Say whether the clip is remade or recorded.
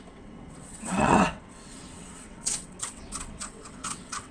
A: remade